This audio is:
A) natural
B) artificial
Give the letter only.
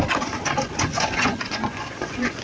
B